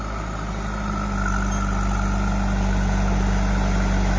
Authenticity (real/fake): real